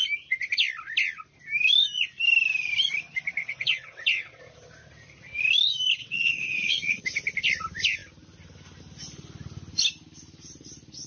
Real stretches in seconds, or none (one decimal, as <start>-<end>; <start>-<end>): 0.0-3.4; 4.4-6.0; 7.0-11.1